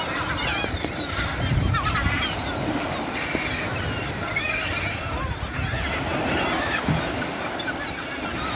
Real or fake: real